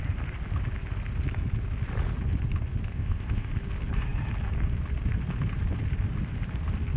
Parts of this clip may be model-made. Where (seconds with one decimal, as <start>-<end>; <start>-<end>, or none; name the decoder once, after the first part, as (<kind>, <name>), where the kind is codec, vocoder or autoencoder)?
2.9-3.5 (codec, ZipCodec)

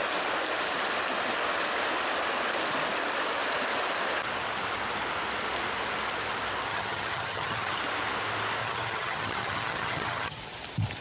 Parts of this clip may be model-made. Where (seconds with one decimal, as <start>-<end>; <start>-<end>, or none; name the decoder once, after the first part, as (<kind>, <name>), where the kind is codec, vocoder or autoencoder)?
6.7-7.8 (vocoder, HiFi-GAN); 8.6-10.4